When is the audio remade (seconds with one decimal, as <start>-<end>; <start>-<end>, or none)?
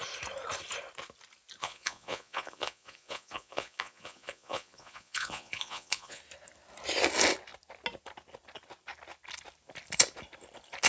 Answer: 1.6-6.2